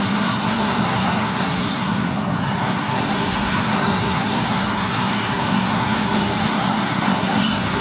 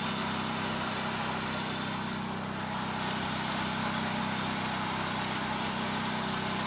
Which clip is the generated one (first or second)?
first